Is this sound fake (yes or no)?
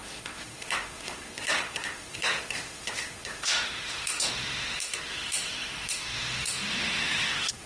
yes